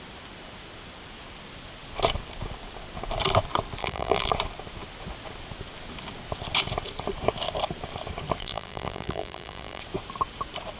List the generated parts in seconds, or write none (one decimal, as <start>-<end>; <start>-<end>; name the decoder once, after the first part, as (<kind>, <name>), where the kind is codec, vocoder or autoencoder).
3.8-4.3 (vocoder, BigVGAN v2); 8.4-9.8